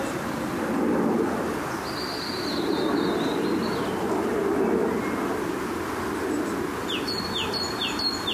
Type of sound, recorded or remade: recorded